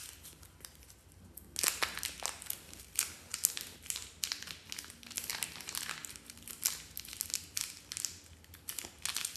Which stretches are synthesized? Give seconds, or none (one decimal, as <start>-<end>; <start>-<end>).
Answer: none